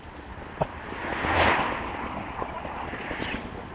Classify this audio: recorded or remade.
recorded